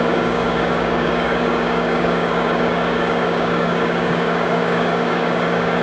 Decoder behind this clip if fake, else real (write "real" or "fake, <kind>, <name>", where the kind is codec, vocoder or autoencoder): fake, codec, DAC